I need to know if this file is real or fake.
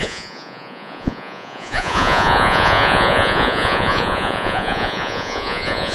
fake